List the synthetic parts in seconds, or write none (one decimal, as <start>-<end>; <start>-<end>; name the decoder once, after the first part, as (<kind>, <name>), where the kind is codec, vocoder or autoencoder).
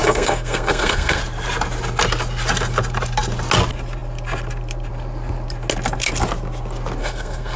0.0-1.2 (codec, SNAC); 7.0-7.6